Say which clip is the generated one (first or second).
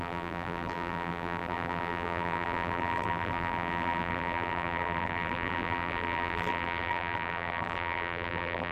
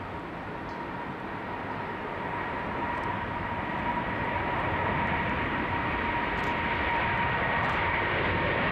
first